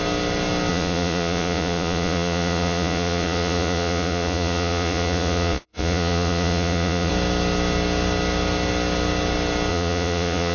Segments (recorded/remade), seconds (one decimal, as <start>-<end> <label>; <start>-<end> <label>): 0.0-0.7 recorded; 0.7-7.1 remade; 7.1-9.7 recorded; 9.7-10.5 remade